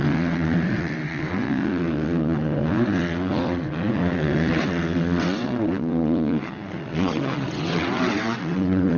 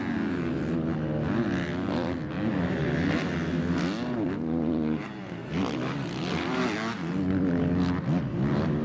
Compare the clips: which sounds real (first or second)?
second